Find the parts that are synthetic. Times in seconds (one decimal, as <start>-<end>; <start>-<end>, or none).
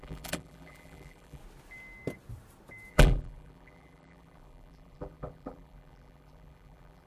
0.0-1.4; 2.9-7.1